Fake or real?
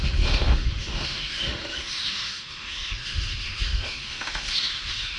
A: fake